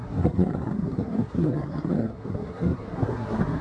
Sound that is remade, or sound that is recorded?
remade